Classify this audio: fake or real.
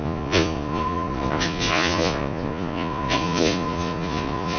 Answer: fake